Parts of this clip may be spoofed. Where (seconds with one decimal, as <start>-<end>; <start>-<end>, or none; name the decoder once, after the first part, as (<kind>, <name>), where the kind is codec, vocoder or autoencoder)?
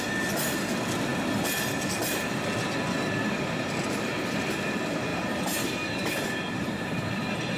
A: 5.1-7.6 (vocoder, BigVGAN v2)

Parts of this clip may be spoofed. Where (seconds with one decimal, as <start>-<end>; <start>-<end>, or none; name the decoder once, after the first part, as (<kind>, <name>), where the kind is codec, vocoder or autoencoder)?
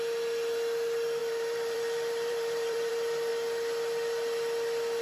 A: 1.2-2.9 (vocoder, BigVGAN v2)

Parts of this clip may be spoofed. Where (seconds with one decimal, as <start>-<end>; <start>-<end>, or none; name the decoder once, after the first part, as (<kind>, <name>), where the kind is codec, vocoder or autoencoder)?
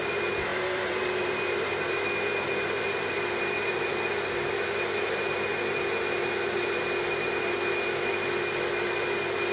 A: 0.5-3.9 (vocoder, BigVGAN v2)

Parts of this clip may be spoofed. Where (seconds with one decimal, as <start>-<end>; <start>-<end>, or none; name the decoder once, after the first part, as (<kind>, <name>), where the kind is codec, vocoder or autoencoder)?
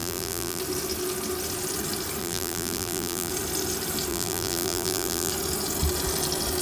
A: 0.0-0.6 (vocoder, BigVGAN v2); 2.2-3.3; 4.1-5.3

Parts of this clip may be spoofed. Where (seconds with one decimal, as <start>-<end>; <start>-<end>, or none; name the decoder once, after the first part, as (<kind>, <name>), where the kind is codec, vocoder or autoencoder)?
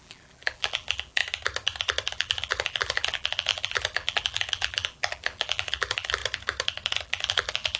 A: 0.0-1.2 (vocoder, BigVGAN v2); 2.1-6.2; 7.0-7.8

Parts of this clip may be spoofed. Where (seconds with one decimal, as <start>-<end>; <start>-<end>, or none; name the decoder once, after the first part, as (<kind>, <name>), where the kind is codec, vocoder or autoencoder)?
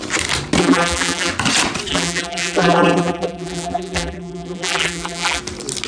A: 0.6-1.3 (vocoder, BigVGAN v2); 1.9-5.4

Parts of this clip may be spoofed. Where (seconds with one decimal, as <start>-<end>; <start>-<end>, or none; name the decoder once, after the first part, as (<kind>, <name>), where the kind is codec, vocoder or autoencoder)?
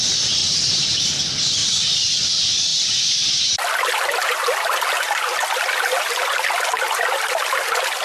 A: 0.4-1.0 (vocoder, BigVGAN v2)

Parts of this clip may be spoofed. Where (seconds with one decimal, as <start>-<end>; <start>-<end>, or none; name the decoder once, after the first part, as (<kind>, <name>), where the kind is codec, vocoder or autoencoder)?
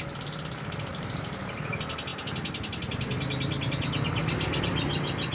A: 0.9-1.6 (vocoder, BigVGAN v2)